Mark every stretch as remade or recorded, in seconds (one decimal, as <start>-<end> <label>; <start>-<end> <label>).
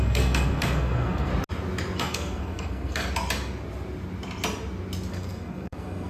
0.0-1.3 remade; 1.3-2.0 recorded; 2.0-3.0 remade; 3.0-5.1 recorded; 5.1-6.1 remade